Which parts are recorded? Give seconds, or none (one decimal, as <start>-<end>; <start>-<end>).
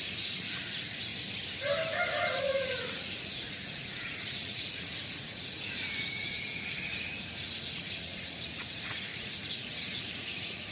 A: 1.1-2.4